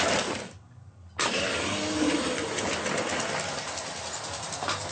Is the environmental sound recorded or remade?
recorded